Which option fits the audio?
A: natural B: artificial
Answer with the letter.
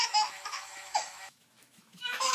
B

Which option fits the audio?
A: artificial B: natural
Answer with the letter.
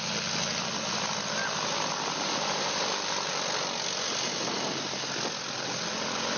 B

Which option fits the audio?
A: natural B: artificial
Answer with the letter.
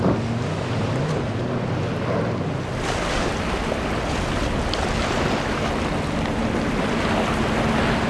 A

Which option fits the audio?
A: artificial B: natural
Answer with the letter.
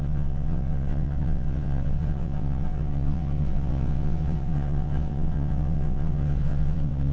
A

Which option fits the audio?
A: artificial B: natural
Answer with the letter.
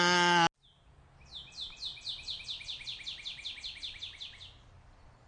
B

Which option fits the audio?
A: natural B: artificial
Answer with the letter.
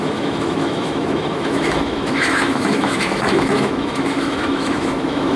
B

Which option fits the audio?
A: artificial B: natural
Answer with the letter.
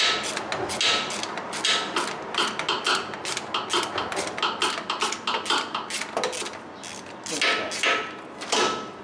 B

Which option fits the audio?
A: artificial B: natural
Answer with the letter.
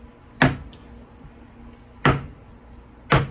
B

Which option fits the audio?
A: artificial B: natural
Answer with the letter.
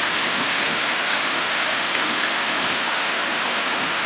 A